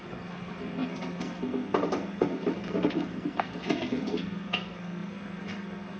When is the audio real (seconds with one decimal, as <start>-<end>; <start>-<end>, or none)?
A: none